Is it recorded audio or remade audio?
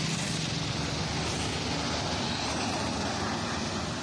recorded